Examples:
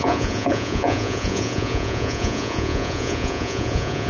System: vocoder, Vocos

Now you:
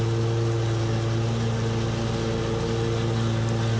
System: none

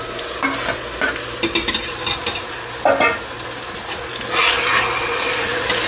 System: none